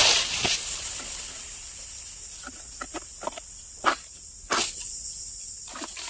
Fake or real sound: real